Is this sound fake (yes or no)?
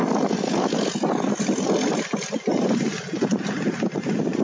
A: no